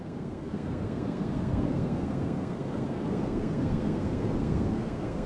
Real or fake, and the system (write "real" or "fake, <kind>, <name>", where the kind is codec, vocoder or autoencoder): fake, codec, SNAC